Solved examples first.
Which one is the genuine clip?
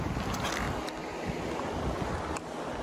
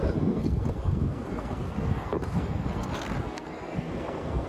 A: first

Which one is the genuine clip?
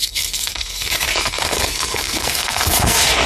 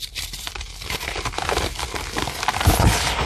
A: second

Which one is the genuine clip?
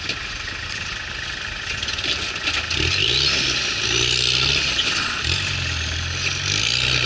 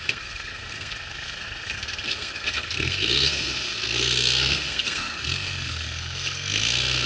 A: first